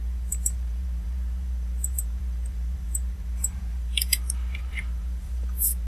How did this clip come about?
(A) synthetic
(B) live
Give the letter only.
A